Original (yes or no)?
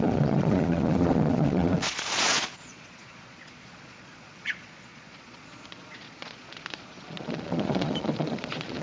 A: no